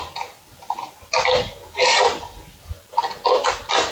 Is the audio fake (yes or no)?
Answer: no